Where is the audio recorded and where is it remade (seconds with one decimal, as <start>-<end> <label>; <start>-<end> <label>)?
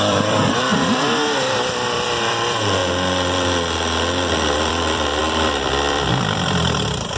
0.0-0.7 remade; 0.7-1.6 recorded; 1.6-2.8 remade; 2.8-4.6 recorded; 4.6-7.2 remade